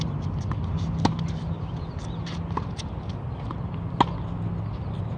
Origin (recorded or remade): recorded